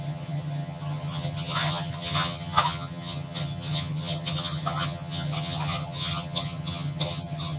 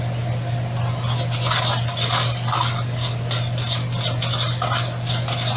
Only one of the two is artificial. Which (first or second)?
first